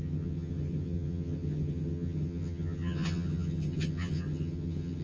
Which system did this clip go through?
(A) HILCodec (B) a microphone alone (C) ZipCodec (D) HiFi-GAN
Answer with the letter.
D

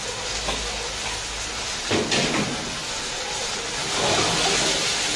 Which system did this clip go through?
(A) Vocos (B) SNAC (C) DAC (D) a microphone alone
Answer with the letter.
D